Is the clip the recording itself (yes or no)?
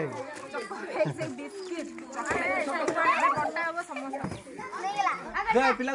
yes